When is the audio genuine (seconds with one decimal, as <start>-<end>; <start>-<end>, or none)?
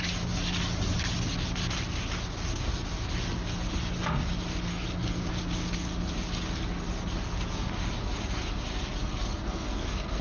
0.0-4.7; 5.3-9.0